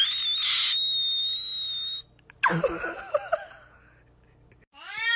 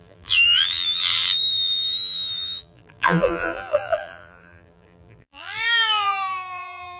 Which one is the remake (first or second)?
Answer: second